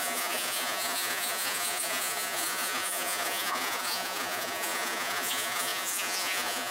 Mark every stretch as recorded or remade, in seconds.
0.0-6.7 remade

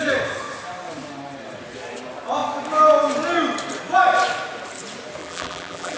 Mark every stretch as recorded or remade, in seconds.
0.0-5.2 recorded; 5.2-6.0 remade

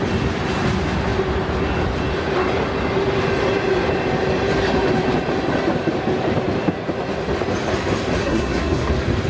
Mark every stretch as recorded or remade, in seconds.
0.0-8.2 recorded; 8.2-8.9 remade; 8.9-9.3 recorded

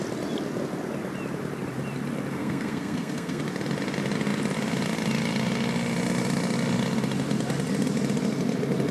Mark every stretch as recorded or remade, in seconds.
0.0-2.3 recorded; 2.3-3.4 remade; 3.4-8.9 recorded

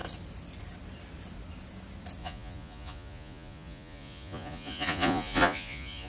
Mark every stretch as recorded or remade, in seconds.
0.0-2.2 recorded; 2.2-6.1 remade